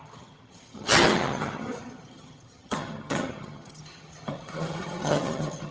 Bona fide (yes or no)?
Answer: no